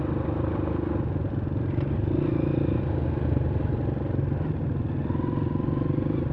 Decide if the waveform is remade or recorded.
recorded